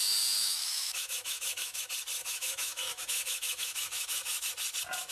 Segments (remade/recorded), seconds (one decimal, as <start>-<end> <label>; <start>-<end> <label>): 0.0-0.4 recorded; 0.4-1.8 remade; 1.8-2.2 recorded; 2.2-4.5 remade; 4.5-5.1 recorded